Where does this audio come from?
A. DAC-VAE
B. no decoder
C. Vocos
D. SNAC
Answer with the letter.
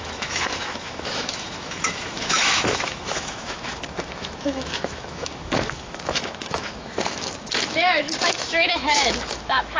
A